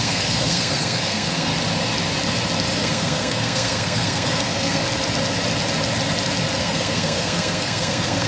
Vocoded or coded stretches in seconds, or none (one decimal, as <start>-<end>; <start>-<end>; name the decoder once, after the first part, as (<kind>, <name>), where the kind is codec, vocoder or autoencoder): 0.0-1.5 (codec, SNAC); 2.8-4.8; 6.6-8.3